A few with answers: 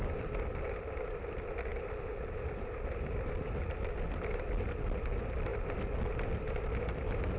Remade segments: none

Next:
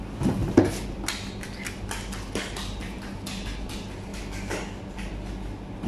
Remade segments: 4.1-4.8 (codec, DAC)

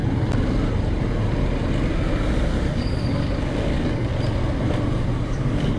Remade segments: 2.3-4.1 (codec, DAC); 5.2-5.8

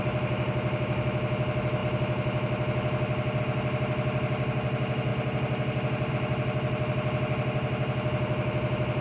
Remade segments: none

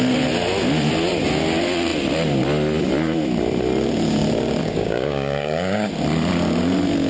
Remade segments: 4.6-5.9 (codec, DAC)